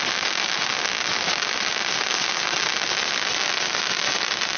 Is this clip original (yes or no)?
yes